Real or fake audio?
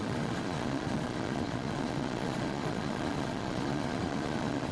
fake